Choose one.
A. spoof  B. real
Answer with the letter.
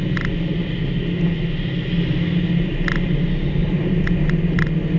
B